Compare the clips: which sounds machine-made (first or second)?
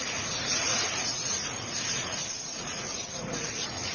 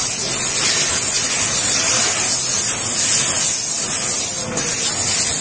first